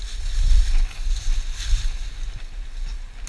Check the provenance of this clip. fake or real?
real